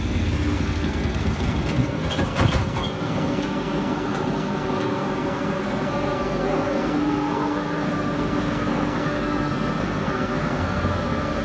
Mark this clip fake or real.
fake